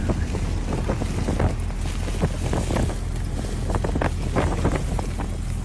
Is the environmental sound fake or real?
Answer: real